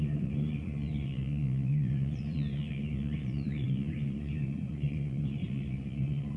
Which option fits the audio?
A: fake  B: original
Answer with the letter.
A